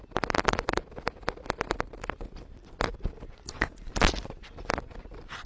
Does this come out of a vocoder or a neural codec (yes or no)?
no